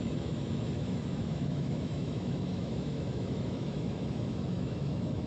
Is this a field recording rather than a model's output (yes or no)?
no